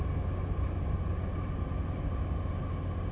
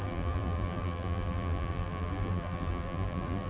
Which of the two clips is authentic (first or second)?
first